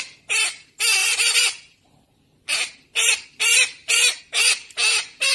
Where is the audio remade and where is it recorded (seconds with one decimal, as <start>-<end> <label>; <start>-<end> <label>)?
0.0-1.0 recorded; 1.0-4.2 remade; 4.2-5.3 recorded